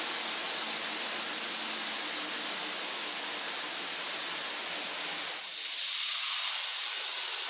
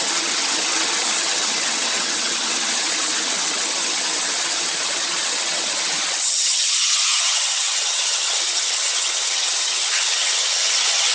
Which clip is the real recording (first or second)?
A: first